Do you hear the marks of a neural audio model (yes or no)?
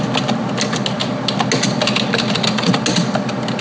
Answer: no